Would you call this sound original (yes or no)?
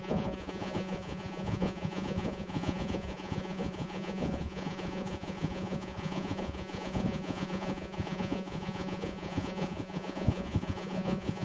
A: no